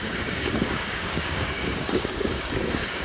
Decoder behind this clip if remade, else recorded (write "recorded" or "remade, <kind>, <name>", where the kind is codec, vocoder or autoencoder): remade, codec, DAC